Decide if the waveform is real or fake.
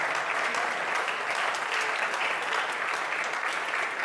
real